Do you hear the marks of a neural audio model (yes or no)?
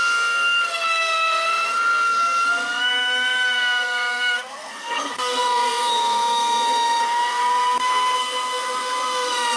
yes